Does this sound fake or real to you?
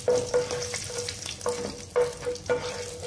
real